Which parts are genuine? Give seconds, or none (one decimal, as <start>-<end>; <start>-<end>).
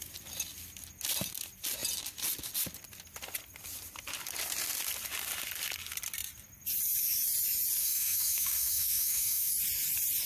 0.0-7.8; 9.5-10.3